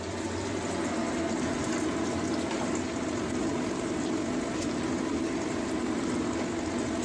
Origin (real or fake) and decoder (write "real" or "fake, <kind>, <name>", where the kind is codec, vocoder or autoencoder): real